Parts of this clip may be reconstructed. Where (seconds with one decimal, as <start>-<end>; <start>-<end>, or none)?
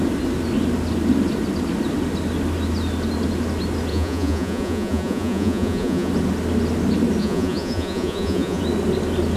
3.9-6.1; 7.2-8.6